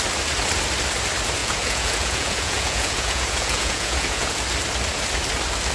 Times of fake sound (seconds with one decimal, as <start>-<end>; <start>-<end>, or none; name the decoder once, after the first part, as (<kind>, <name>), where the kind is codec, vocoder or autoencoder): 1.4-4.4 (vocoder, Vocos)